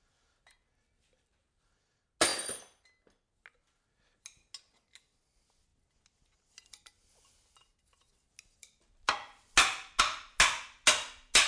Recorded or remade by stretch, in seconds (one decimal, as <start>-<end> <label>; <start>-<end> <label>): 0.0-11.5 recorded